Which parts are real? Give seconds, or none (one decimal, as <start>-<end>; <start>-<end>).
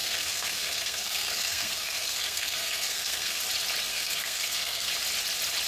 3.4-3.9; 4.9-5.7